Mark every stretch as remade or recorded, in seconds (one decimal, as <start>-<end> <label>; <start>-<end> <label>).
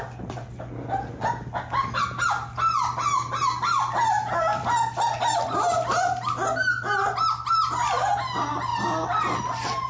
0.0-9.9 recorded